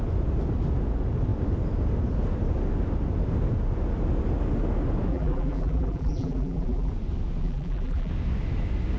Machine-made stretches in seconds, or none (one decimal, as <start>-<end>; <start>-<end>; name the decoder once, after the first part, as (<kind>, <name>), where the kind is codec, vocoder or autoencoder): 5.1-6.9 (vocoder, BigVGAN v2); 7.4-8.1